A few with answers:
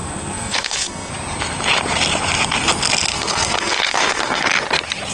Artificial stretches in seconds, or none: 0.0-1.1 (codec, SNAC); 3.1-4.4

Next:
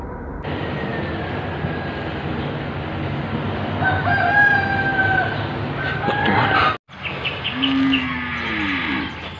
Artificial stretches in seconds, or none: none

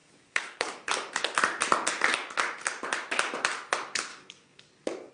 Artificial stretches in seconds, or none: 0.0-1.2 (codec, DAC); 4.1-5.1

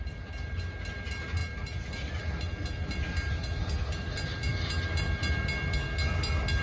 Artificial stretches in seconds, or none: none

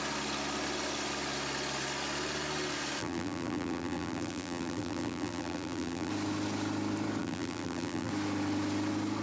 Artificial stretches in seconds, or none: 3.0-6.1 (vocoder, BigVGAN v2); 7.2-8.1